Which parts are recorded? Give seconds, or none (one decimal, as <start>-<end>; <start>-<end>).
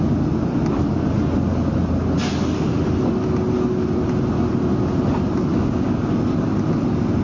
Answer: 0.0-5.5; 6.1-7.2